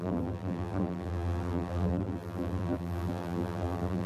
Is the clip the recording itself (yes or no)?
no